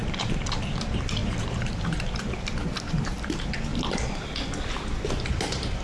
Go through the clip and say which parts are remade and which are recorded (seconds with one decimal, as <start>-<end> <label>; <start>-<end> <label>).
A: 0.0-0.5 recorded; 0.5-3.7 remade; 3.7-5.1 recorded; 5.1-5.8 remade